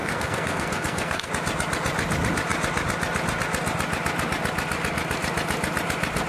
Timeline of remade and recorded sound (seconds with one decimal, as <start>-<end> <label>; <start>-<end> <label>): 0.0-1.3 remade; 1.3-6.3 recorded